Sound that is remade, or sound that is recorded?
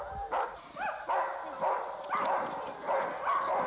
recorded